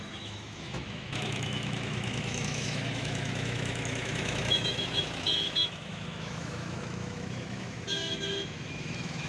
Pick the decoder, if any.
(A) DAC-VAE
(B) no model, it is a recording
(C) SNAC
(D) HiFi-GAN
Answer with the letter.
A